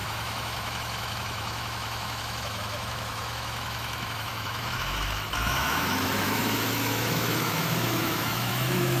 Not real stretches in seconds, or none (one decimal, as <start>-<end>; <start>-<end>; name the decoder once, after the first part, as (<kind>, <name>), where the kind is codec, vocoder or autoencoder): 0.0-9.0 (autoencoder, DAC-VAE)